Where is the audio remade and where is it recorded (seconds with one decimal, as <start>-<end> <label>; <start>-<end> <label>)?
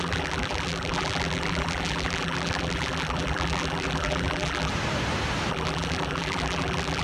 0.0-4.7 remade; 4.7-5.5 recorded; 5.5-7.0 remade